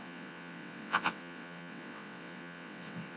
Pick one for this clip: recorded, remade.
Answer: remade